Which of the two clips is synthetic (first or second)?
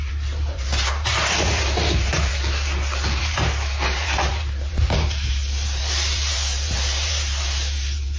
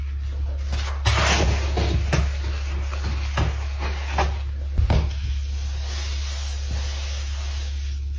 first